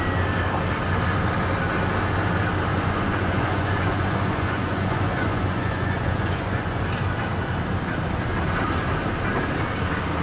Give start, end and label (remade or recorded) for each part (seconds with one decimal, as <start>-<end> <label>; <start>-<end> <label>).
0.0-2.7 recorded; 2.7-6.8 remade; 6.8-10.2 recorded

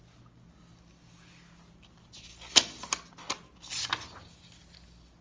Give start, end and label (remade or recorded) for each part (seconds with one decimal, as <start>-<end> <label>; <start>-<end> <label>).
0.0-5.2 recorded

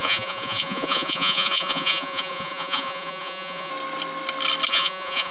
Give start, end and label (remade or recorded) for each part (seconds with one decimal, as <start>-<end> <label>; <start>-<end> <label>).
0.0-3.7 remade; 3.7-4.7 recorded; 4.7-5.3 remade

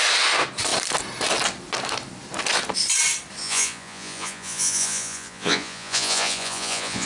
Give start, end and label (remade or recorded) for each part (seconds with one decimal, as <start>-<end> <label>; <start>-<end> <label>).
0.0-3.4 recorded; 3.4-7.1 remade

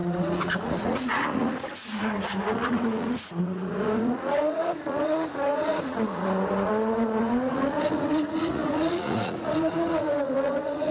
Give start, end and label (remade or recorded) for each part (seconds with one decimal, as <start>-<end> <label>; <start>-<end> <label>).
0.0-10.9 remade